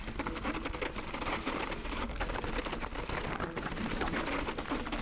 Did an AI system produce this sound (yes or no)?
no